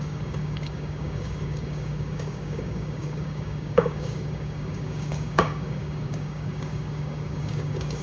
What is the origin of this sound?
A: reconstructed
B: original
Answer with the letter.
A